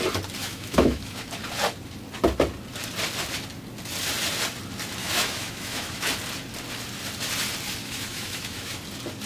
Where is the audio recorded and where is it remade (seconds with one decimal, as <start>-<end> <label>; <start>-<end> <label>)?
0.0-0.4 recorded; 0.4-1.3 remade; 1.3-5.0 recorded; 5.0-6.1 remade; 6.1-7.8 recorded; 7.8-8.8 remade; 8.8-9.3 recorded